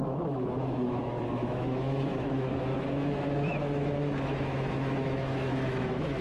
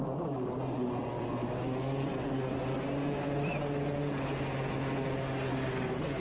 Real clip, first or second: second